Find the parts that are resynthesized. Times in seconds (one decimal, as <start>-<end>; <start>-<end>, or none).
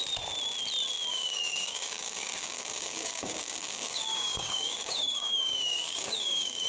1.1-6.7